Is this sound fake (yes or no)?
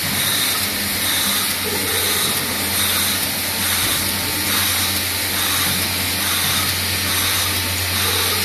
no